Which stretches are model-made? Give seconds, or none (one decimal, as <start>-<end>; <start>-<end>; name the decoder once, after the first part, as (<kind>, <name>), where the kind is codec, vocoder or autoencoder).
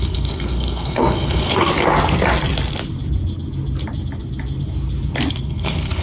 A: 0.0-1.7 (codec, SNAC); 5.3-6.0